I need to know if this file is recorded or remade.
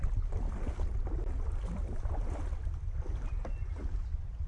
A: recorded